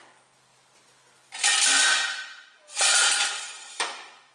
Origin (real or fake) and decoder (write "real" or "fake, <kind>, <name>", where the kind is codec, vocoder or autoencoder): real